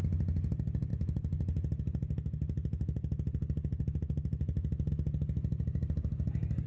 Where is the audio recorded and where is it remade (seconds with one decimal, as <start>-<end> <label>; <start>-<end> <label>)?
0.0-6.7 recorded